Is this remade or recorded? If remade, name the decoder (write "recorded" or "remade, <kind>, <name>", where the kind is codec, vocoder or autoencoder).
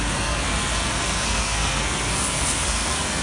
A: remade, codec, SNAC